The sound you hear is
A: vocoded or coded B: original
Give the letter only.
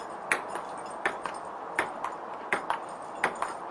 B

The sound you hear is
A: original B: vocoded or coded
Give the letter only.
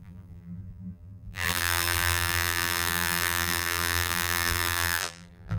B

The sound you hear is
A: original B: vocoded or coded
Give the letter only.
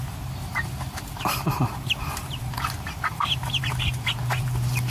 B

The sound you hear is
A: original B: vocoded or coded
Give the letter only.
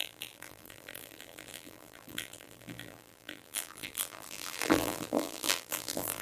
B